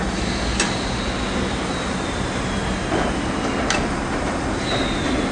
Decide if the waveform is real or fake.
real